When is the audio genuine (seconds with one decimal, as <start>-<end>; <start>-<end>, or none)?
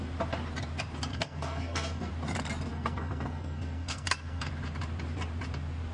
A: 0.0-1.1; 2.1-2.7; 4.5-5.9